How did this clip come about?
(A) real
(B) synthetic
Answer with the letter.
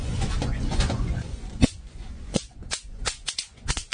B